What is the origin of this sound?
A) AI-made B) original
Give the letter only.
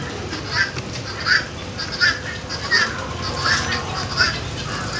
B